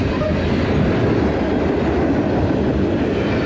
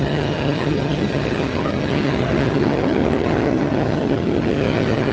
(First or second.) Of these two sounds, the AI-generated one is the second